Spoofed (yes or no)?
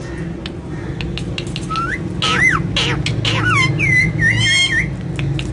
no